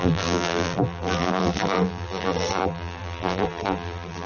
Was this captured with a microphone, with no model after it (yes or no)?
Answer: no